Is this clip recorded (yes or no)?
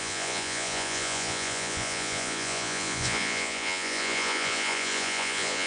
no